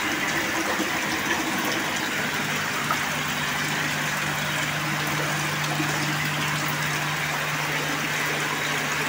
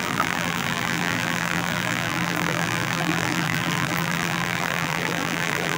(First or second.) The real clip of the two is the first